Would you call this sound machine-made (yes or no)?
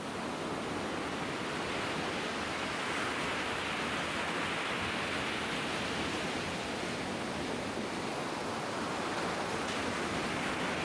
no